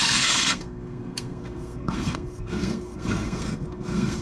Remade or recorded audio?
remade